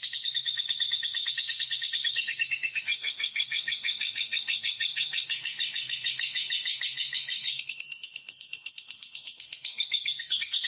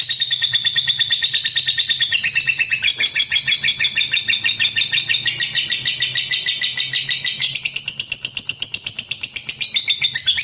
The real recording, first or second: second